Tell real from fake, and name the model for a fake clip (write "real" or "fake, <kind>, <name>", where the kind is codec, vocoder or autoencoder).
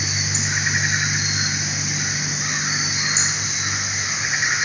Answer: real